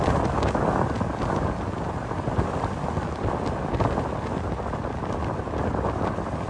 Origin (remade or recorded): recorded